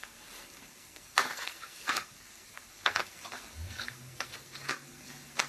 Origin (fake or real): fake